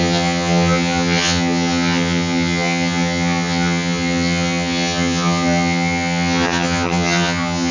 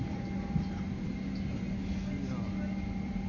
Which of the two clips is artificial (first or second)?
first